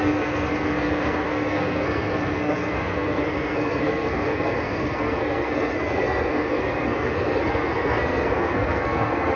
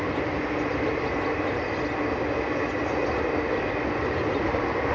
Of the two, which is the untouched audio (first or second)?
second